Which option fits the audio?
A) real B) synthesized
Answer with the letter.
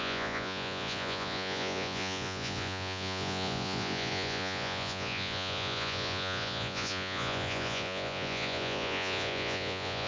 B